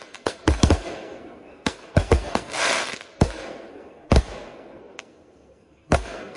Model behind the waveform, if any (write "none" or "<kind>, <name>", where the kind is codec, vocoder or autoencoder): codec, SNAC